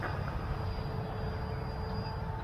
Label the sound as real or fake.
real